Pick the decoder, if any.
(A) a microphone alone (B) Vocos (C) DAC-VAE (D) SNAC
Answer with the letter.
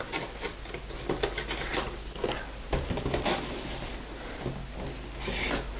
A